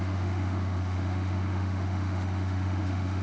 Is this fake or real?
fake